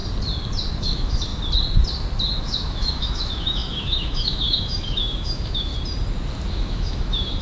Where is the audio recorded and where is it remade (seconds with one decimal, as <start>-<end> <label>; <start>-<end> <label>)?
0.0-0.8 recorded; 0.8-1.3 remade; 1.3-2.4 recorded; 2.4-5.7 remade; 5.7-6.5 recorded; 6.5-7.4 remade